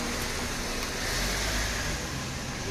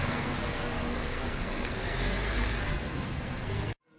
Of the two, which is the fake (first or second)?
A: second